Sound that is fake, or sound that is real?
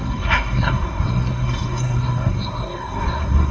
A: fake